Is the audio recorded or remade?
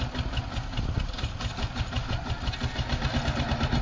recorded